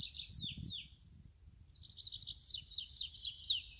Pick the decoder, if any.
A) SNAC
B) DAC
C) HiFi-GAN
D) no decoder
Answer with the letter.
D